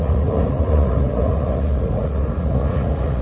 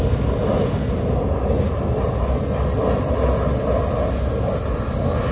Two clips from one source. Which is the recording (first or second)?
second